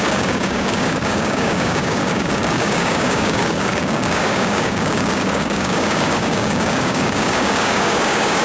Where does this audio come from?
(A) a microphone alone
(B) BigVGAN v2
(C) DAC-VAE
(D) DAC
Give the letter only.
D